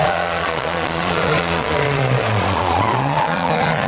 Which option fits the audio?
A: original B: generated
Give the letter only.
B